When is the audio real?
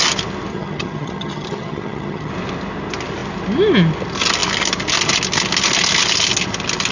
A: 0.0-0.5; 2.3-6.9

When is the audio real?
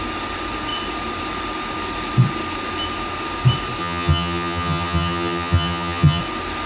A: 0.0-3.8; 6.2-6.7